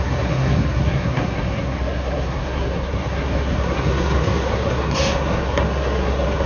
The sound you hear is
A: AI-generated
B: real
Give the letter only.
A